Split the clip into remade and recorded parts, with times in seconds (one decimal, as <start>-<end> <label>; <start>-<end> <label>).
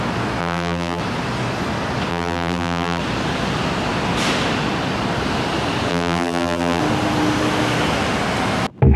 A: 0.0-0.4 recorded; 0.4-1.0 remade; 1.0-2.1 recorded; 2.1-3.0 remade; 3.0-5.9 recorded; 5.9-6.8 remade; 6.8-9.0 recorded